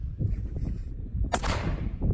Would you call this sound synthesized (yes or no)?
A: yes